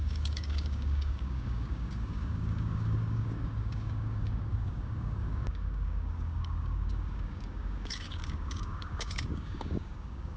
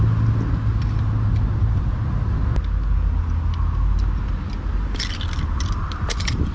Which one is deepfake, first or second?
first